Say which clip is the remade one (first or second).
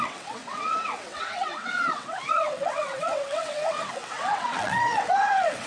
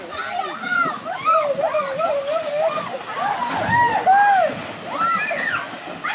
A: first